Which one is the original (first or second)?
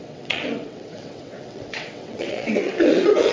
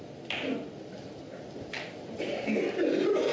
second